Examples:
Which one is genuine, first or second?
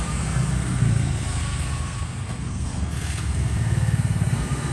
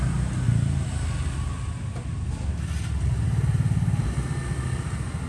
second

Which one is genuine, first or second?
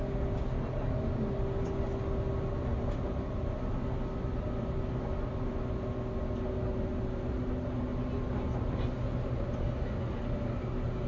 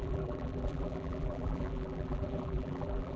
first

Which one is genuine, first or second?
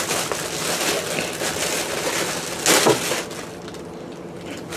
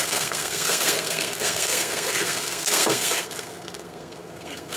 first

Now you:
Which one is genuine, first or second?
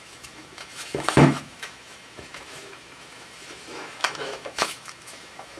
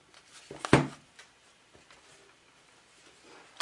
second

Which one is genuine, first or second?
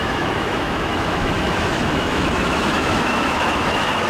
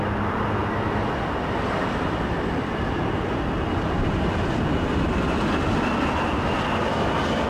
second